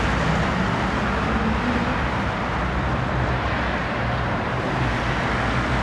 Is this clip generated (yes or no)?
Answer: no